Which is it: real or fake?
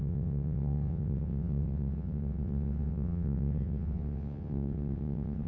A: fake